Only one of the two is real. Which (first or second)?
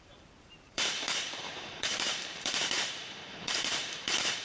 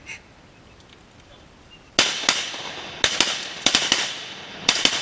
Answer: second